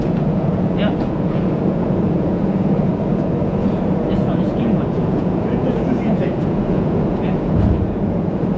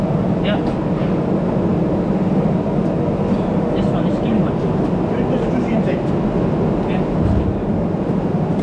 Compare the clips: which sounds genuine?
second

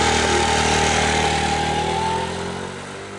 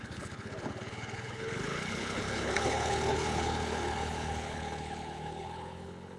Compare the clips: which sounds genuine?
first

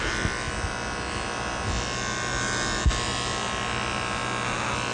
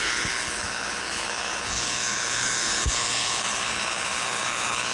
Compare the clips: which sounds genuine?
first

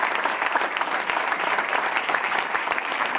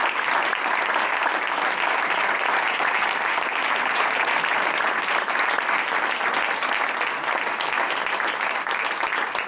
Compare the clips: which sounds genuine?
second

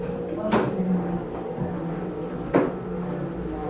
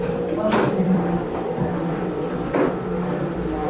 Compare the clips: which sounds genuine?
first